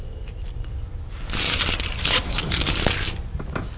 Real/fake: real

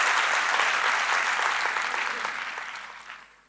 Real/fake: real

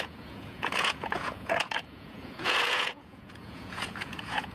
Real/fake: fake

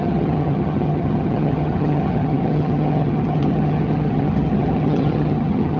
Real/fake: fake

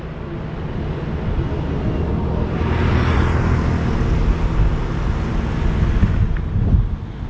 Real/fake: real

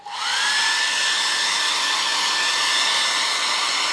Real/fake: real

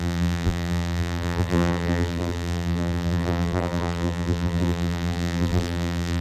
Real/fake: fake